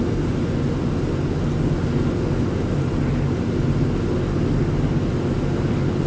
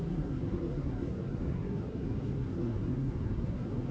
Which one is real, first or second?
first